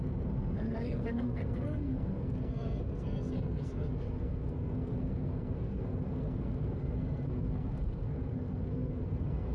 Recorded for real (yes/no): no